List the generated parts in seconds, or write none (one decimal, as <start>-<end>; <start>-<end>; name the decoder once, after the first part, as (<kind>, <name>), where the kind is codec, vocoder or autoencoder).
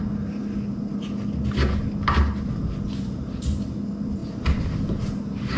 none